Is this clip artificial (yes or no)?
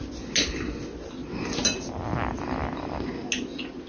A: no